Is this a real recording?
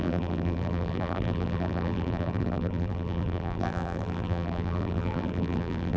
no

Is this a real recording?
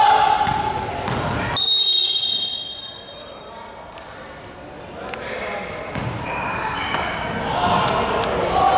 yes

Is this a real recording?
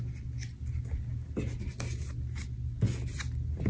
yes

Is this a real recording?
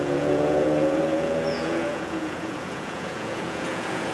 no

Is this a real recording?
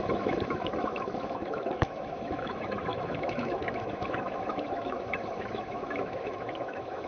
no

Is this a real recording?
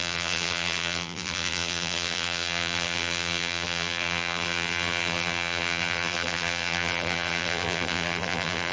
no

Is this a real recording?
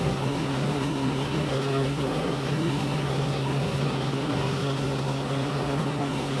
no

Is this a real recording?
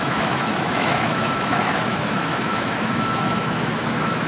no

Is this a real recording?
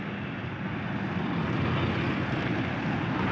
yes